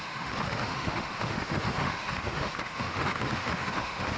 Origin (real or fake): fake